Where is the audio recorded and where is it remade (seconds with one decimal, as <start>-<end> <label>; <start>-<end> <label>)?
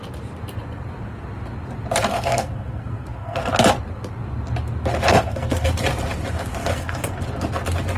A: 0.0-2.1 recorded; 2.1-3.5 remade; 3.5-5.1 recorded; 5.1-5.7 remade; 5.7-6.6 recorded; 6.6-7.2 remade; 7.2-8.0 recorded